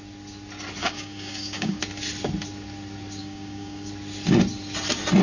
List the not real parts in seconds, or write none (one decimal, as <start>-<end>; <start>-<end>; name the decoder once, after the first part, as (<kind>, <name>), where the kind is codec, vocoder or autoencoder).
0.8-1.8 (codec, DAC); 3.2-3.9